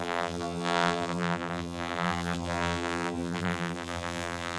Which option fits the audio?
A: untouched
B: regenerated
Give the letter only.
B